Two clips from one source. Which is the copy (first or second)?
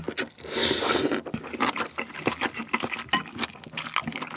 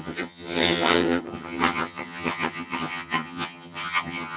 second